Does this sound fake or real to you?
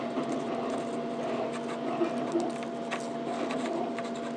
real